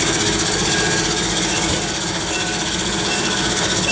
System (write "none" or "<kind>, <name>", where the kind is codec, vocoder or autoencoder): codec, DAC